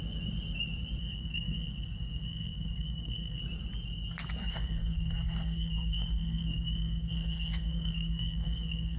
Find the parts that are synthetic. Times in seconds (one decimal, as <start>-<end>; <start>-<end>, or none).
1.0-3.4; 4.4-9.0